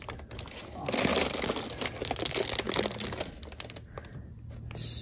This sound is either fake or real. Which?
real